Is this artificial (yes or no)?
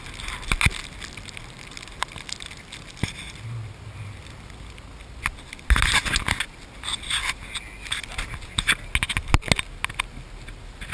no